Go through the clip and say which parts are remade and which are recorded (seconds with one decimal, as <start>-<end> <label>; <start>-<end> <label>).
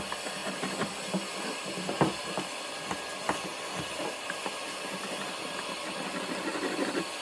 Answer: 0.0-0.4 recorded; 0.4-2.2 remade; 2.2-3.5 recorded; 3.5-4.4 remade; 4.4-7.2 recorded